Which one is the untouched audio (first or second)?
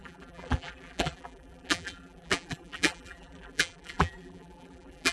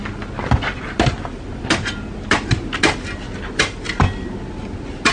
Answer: second